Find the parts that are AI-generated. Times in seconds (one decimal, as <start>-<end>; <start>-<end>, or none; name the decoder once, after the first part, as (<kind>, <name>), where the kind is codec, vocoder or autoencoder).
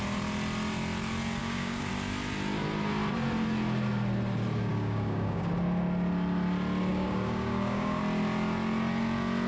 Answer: 1.4-1.9 (codec, DAC); 4.7-5.5; 6.9-8.0